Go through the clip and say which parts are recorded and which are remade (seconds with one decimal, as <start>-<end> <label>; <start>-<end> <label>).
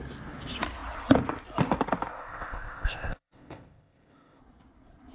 0.0-2.1 recorded; 2.1-4.4 remade; 4.4-5.1 recorded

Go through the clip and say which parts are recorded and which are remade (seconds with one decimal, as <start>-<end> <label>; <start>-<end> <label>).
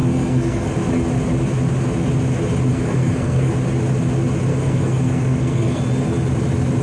0.0-0.7 remade; 0.7-2.7 recorded; 2.7-3.5 remade; 3.5-4.5 recorded; 4.5-5.8 remade; 5.8-6.8 recorded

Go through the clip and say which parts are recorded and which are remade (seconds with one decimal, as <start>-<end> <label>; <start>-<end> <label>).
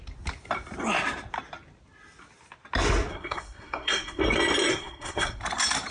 0.0-3.1 recorded; 3.1-4.2 remade; 4.2-4.7 recorded; 4.7-5.4 remade; 5.4-5.9 recorded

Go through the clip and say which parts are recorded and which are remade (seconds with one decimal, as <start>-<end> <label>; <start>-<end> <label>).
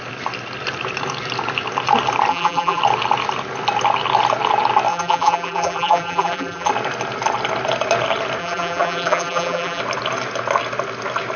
0.0-2.3 recorded; 2.3-2.8 remade; 2.8-4.9 recorded; 4.9-6.7 remade; 6.7-8.4 recorded; 8.4-9.8 remade; 9.8-11.4 recorded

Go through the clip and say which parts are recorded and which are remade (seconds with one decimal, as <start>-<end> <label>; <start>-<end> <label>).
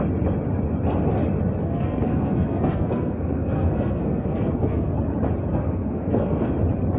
0.0-1.6 recorded; 1.6-4.9 remade; 4.9-5.5 recorded; 5.5-6.5 remade; 6.5-7.0 recorded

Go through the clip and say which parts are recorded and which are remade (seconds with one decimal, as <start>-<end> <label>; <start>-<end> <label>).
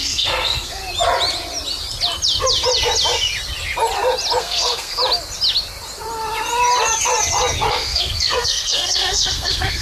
0.0-0.8 remade; 0.8-4.4 recorded; 4.4-5.0 remade; 5.0-7.7 recorded; 7.7-9.8 remade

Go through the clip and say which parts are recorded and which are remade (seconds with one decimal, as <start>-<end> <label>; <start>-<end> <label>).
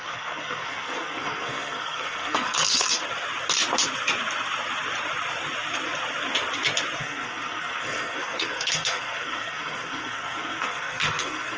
0.0-3.0 remade; 3.0-7.0 recorded; 7.0-11.6 remade